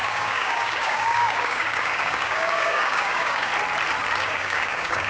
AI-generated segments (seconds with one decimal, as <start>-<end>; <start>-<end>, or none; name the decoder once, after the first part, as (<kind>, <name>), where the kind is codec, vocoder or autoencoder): 0.0-3.5 (codec, DAC); 4.2-5.1